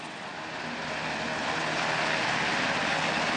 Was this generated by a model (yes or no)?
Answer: no